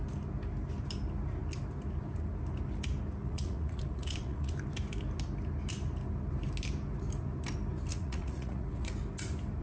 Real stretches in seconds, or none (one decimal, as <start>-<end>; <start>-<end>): 0.0-3.2; 4.5-7.9; 8.9-9.6